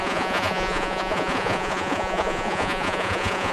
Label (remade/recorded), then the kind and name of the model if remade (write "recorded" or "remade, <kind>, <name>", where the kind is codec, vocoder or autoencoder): remade, vocoder, Vocos